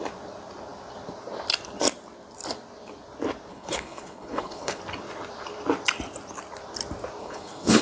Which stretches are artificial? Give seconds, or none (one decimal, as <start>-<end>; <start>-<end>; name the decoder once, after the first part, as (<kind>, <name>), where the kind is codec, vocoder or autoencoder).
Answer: 3.5-4.8 (codec, HILCodec); 7.2-7.8